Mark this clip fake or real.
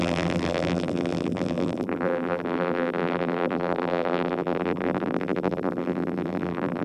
fake